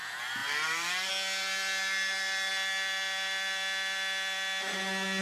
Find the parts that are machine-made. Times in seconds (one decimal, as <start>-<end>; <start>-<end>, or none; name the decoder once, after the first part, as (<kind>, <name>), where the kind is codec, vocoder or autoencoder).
0.4-1.1 (vocoder, BigVGAN v2)